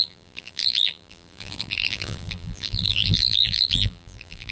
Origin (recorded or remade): remade